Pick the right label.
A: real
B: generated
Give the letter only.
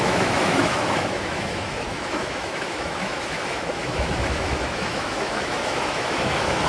B